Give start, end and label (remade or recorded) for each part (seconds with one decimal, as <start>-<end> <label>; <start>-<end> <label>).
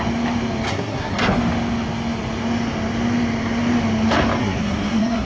0.0-0.7 recorded; 0.7-1.4 remade; 1.4-4.4 recorded; 4.4-5.3 remade